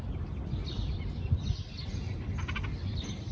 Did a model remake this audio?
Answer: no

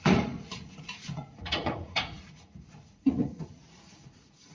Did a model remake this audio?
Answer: yes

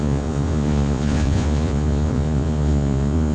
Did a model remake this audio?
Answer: yes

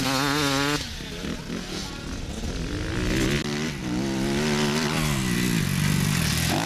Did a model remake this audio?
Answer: no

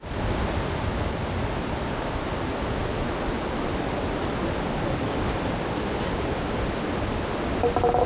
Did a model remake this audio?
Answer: no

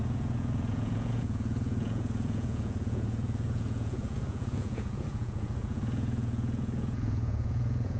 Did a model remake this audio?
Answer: yes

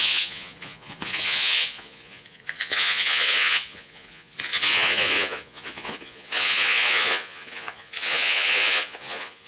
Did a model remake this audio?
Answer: yes